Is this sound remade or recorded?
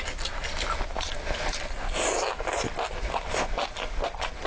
recorded